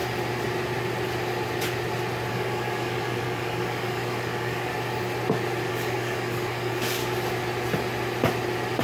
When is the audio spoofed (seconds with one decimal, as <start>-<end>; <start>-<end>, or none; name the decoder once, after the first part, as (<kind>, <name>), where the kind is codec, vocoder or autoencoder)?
2.3-4.7 (codec, DAC); 5.7-7.0